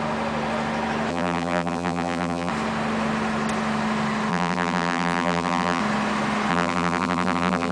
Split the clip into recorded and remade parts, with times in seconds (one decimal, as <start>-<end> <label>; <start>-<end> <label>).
0.0-1.1 recorded; 1.1-2.5 remade; 2.5-4.3 recorded; 4.3-5.8 remade; 5.8-6.5 recorded; 6.5-7.7 remade